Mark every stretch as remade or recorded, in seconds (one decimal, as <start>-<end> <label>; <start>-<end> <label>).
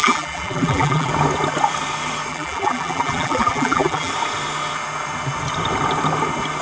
0.0-1.1 remade; 1.1-2.3 recorded; 2.3-4.1 remade; 4.1-6.6 recorded